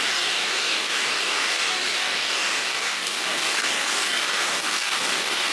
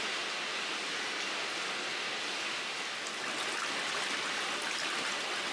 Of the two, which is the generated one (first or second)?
first